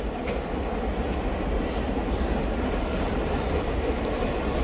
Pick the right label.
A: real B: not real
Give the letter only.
A